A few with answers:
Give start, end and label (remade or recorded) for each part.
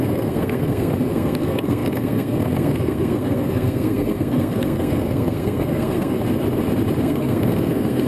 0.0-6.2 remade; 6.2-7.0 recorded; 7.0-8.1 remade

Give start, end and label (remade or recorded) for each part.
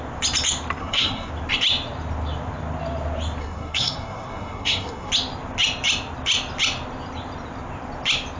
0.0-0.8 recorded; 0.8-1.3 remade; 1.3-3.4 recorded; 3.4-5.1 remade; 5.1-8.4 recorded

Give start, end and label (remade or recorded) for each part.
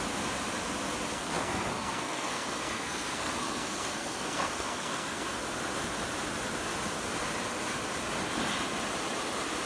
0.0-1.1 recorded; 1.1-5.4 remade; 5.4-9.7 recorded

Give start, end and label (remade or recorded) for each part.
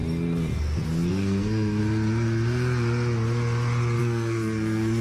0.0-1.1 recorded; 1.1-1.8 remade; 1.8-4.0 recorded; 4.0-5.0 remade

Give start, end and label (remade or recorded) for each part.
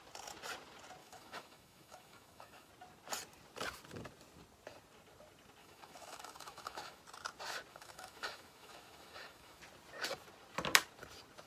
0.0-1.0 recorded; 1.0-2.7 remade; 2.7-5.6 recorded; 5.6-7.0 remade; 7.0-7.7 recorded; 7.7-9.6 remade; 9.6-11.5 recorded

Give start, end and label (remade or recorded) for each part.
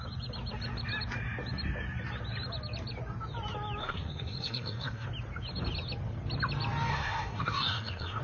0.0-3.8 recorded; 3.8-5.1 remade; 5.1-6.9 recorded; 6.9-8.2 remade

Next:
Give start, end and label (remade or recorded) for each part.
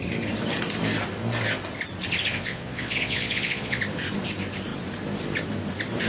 0.0-2.3 recorded; 2.3-3.8 remade; 3.8-6.1 recorded